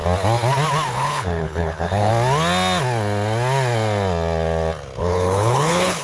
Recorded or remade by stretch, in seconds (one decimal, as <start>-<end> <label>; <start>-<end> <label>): 0.0-0.9 recorded; 0.9-2.1 remade; 2.1-5.0 recorded; 5.0-6.0 remade